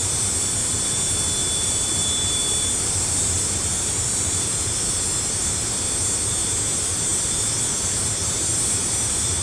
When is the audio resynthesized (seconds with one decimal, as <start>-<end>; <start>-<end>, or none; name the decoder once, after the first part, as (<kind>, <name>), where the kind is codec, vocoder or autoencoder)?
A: 1.4-4.9 (vocoder, BigVGAN v2)